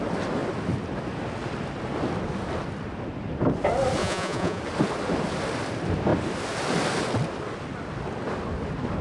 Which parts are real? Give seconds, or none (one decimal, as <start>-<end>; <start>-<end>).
0.0-4.0; 4.6-9.0